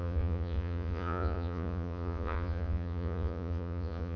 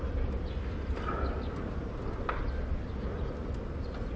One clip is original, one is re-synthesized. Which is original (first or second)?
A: second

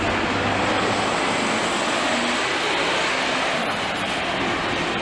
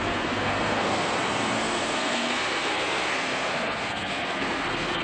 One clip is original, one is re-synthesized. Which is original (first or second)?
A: first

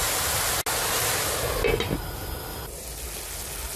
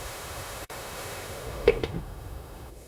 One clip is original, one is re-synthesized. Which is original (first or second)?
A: first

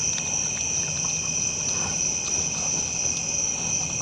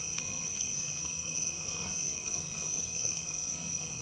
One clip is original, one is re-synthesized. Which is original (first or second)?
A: first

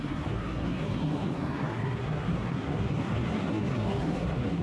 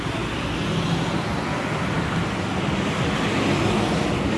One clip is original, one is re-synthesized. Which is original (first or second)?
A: second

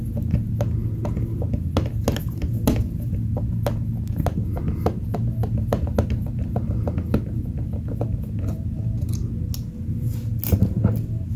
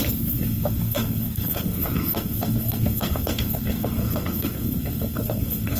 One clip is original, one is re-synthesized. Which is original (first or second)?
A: first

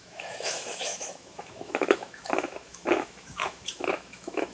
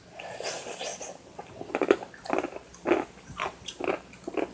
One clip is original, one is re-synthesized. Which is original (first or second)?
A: second